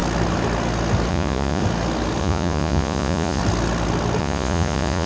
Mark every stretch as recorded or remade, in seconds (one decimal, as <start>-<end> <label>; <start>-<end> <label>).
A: 0.0-1.1 recorded; 1.1-1.6 remade; 1.6-2.2 recorded; 2.2-3.4 remade; 3.4-4.2 recorded; 4.2-5.1 remade